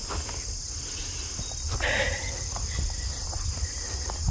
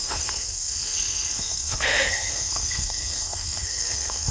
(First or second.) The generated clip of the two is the second